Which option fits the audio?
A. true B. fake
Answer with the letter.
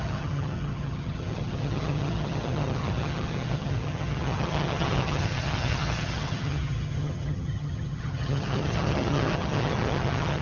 B